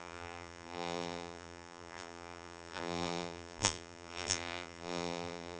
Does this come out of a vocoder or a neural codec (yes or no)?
yes